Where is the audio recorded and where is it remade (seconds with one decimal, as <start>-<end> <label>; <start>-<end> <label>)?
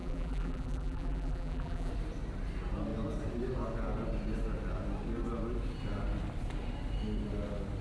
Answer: 0.0-1.9 remade; 1.9-7.8 recorded